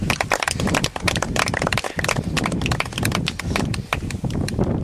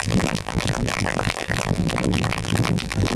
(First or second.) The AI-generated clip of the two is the second